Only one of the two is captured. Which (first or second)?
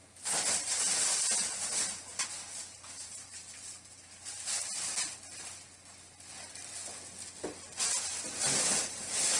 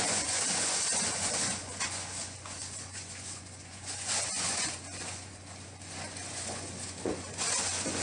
first